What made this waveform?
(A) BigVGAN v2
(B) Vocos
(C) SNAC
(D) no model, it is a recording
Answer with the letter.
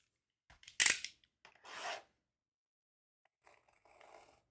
D